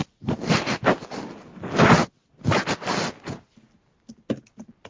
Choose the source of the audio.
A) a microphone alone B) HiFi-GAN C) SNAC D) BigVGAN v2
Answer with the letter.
A